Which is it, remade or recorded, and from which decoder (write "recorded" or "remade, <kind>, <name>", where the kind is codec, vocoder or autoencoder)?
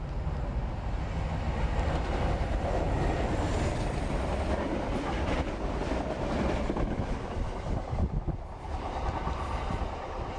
recorded